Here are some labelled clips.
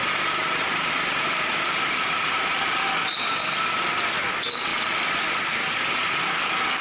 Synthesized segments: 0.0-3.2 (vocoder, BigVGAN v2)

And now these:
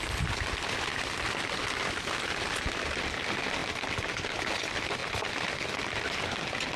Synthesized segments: none

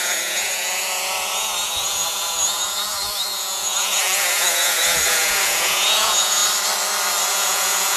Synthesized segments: 0.0-6.4 (vocoder, Vocos); 7.3-8.0

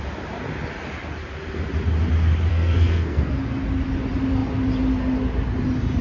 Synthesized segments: 2.5-3.3 (codec, SNAC)

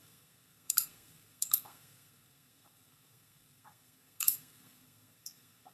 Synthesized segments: 0.0-5.7 (codec, SNAC)